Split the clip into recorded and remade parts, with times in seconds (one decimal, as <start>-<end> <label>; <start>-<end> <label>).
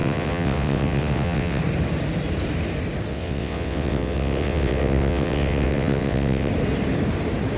0.0-1.6 remade; 1.6-3.1 recorded; 3.1-6.5 remade; 6.5-7.6 recorded